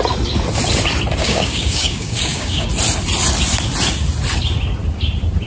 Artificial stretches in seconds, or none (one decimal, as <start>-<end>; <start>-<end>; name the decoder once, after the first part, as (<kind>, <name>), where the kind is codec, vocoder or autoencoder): 1.2-2.7 (codec, DAC)